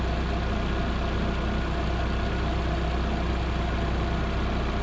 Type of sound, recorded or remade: recorded